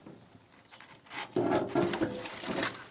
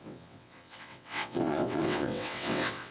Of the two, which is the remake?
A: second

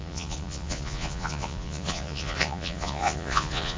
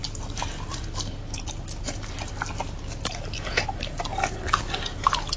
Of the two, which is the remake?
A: first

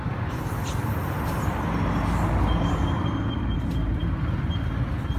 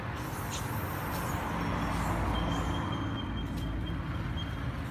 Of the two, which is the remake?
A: first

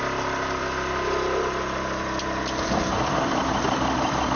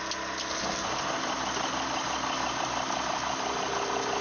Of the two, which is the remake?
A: first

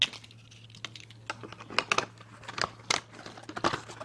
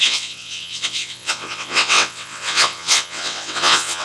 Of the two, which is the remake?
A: second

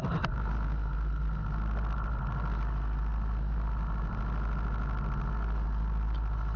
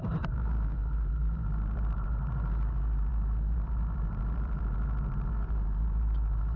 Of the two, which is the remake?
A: second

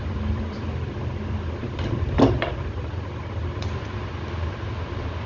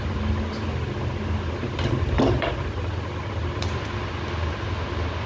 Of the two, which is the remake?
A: first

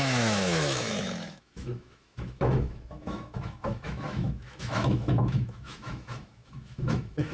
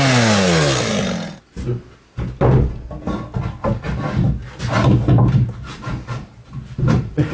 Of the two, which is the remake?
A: first